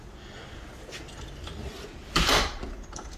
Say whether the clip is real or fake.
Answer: real